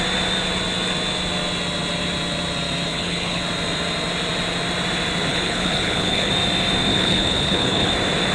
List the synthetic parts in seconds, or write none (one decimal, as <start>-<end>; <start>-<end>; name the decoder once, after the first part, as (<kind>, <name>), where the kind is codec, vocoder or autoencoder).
2.9-3.4 (codec, HILCodec); 5.3-6.3; 6.9-7.9